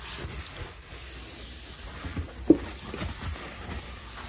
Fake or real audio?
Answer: real